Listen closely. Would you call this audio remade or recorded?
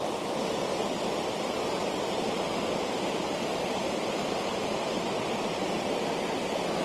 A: recorded